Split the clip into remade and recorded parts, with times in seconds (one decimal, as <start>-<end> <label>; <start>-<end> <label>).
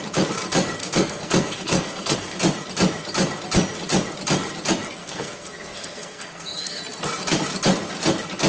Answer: 0.0-0.8 recorded; 0.8-2.4 remade; 2.4-5.0 recorded; 5.0-6.8 remade; 6.8-8.5 recorded